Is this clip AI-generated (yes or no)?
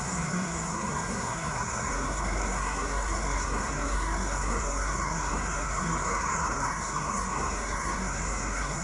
yes